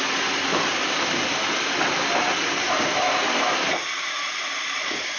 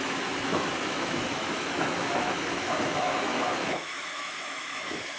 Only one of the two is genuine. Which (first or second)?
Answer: first